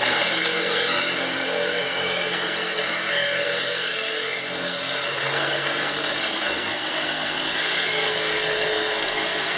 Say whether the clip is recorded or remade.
remade